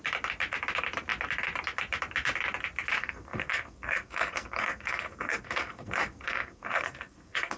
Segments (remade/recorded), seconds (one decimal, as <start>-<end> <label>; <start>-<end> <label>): 0.0-3.0 recorded; 3.0-7.6 remade